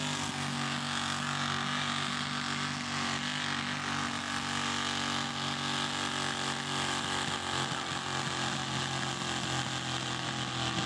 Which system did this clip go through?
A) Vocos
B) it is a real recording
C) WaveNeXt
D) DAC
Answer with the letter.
B